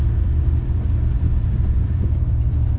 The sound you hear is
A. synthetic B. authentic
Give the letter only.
B